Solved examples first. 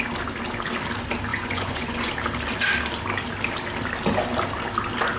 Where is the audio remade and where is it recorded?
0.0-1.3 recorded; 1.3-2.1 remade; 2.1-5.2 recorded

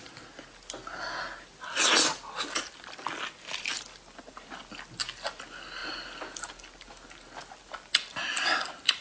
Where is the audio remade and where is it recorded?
0.0-9.0 recorded

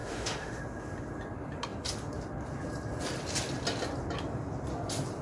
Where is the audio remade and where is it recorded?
0.0-0.6 remade; 0.6-5.2 recorded

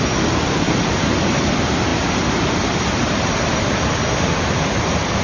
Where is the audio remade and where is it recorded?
0.0-5.2 recorded

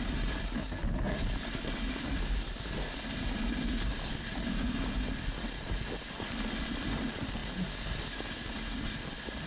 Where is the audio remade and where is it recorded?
0.0-9.5 recorded

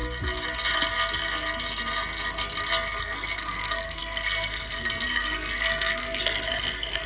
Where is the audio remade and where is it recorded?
0.0-3.0 recorded; 3.0-7.1 remade